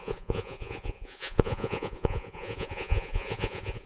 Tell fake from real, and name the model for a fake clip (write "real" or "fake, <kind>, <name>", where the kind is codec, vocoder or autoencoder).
fake, vocoder, Vocos